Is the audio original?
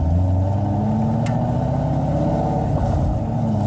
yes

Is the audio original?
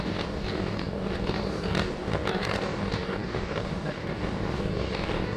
no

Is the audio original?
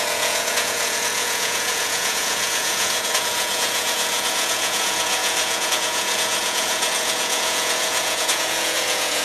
no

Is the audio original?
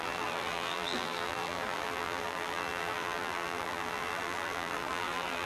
no